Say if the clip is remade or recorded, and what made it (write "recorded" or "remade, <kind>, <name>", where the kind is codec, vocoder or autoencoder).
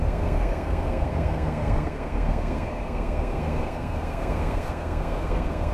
remade, codec, SNAC